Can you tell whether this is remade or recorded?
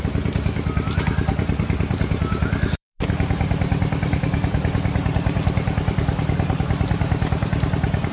remade